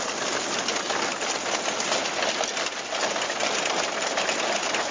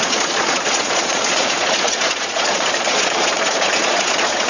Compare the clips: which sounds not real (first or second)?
second